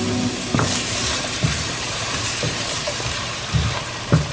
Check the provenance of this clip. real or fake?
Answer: fake